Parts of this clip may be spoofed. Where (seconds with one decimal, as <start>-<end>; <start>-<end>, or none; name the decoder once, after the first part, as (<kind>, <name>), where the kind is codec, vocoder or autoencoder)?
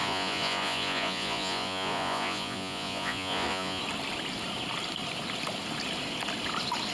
0.0-3.8 (vocoder, Vocos)